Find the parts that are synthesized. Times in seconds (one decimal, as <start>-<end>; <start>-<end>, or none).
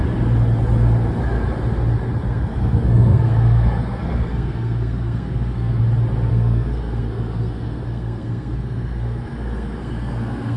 2.3-5.8; 6.3-10.6